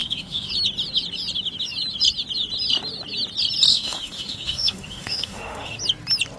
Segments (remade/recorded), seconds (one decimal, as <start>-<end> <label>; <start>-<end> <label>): 0.0-0.5 remade; 0.5-3.7 recorded; 3.7-5.8 remade; 5.8-6.4 recorded